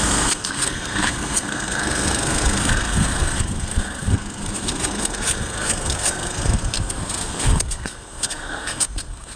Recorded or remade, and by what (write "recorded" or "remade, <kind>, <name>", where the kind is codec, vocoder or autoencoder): remade, codec, SNAC